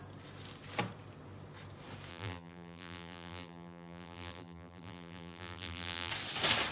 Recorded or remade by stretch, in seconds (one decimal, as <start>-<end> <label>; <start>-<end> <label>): 0.0-2.1 recorded; 2.1-6.1 remade; 6.1-6.7 recorded